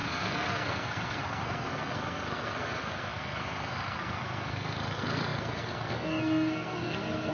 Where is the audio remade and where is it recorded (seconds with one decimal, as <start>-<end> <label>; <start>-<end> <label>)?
0.0-7.3 remade